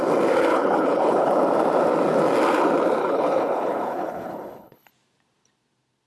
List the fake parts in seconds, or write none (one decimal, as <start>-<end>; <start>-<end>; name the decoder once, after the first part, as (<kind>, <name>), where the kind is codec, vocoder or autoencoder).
0.5-1.3 (codec, HILCodec); 3.0-4.9